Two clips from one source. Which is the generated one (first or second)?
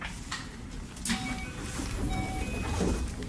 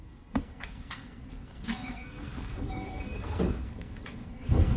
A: second